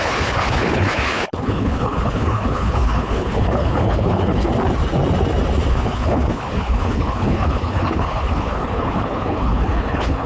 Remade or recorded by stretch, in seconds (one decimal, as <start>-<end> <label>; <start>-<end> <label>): 0.0-4.5 remade; 4.5-5.7 recorded; 5.7-10.3 remade